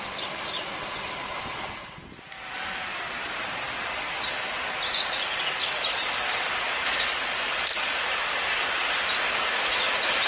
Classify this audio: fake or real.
real